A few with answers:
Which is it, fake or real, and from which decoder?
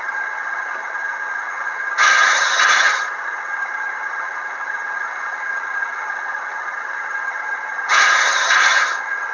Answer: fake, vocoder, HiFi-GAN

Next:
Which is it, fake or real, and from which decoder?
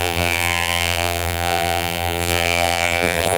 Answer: fake, vocoder, BigVGAN v2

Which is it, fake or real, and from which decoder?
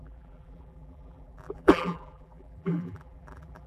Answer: fake, vocoder, BigVGAN v2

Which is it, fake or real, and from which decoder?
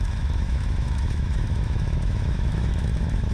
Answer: fake, autoencoder, DAC-VAE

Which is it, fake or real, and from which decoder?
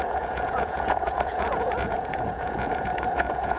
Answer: fake, vocoder, Vocos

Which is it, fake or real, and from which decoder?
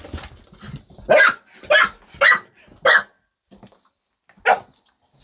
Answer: real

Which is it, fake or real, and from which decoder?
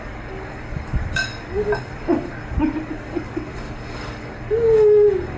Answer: fake, codec, DAC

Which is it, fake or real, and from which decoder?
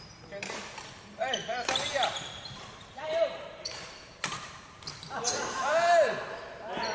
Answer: fake, vocoder, BigVGAN v2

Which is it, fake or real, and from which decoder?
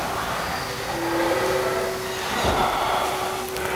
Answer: real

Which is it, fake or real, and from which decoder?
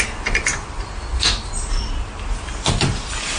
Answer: real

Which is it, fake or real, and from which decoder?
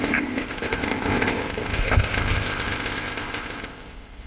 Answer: fake, codec, ZipCodec